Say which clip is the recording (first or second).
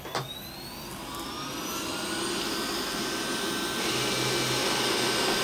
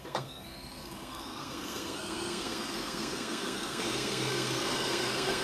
first